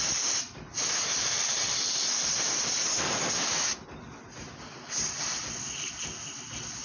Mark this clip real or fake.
fake